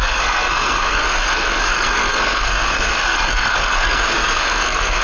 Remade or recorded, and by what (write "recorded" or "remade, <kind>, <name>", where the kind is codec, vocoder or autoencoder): remade, codec, SNAC